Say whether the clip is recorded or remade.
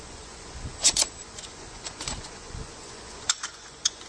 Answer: remade